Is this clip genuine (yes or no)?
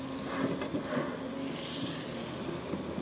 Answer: yes